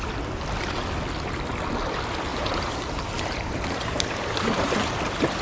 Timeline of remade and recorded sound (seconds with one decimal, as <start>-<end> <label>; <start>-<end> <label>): 0.0-2.3 recorded; 2.3-5.0 remade; 5.0-5.4 recorded